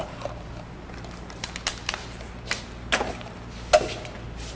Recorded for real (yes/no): yes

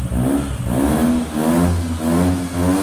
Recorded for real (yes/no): yes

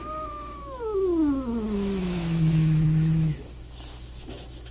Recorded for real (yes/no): no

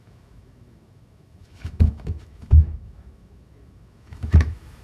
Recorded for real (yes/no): no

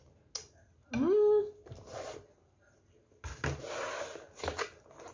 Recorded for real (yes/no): yes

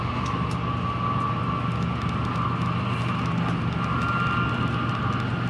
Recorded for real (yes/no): yes